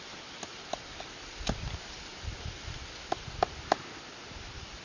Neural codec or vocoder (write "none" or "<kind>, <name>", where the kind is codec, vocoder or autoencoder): none